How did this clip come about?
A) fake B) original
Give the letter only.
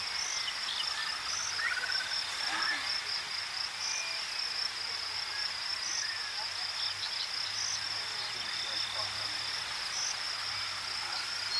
B